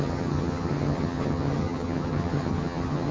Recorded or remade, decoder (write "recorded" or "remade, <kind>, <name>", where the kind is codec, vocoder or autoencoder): remade, vocoder, HiFi-GAN